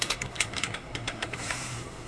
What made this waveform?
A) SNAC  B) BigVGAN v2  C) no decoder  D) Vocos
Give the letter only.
A